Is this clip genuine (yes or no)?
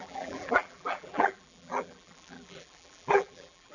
no